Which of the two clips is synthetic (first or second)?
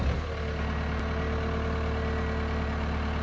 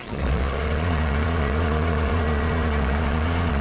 second